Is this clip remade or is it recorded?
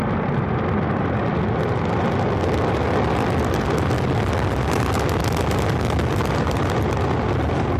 recorded